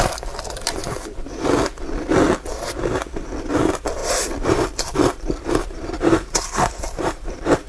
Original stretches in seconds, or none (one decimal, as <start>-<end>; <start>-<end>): 0.0-4.0